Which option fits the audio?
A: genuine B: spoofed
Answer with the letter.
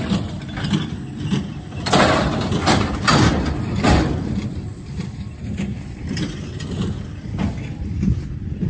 B